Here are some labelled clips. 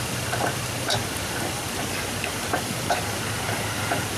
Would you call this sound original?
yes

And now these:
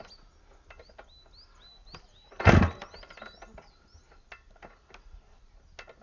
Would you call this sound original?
yes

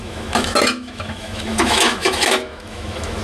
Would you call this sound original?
no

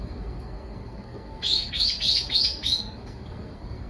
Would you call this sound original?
no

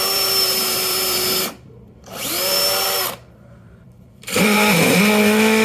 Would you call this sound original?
no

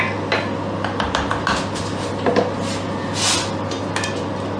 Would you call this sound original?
yes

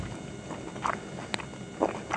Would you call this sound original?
yes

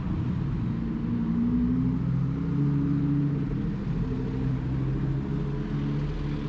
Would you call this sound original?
yes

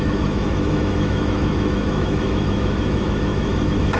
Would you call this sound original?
no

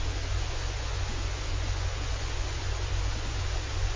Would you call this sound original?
no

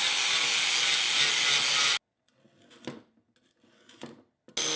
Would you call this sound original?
yes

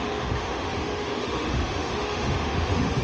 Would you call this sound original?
no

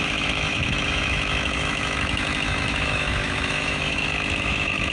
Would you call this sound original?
no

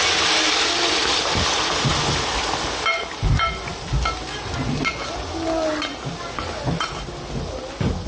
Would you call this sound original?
yes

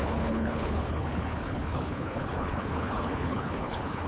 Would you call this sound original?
no